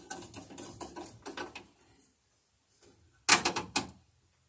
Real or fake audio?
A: real